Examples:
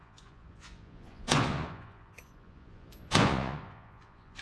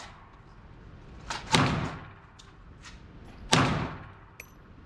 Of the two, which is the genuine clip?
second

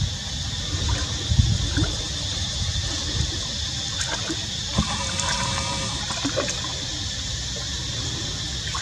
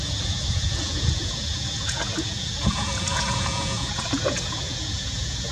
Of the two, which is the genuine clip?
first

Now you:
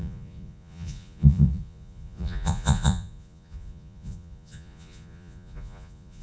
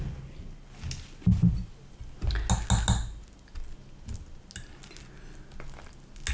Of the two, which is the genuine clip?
second